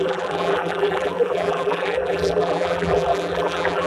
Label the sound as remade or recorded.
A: remade